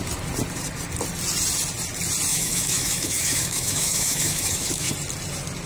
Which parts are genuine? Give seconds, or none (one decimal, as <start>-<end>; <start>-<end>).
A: 0.0-2.3; 4.9-5.7